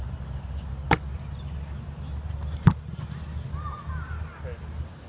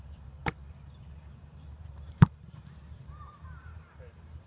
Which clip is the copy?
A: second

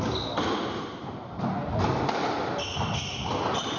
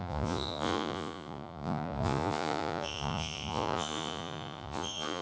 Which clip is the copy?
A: second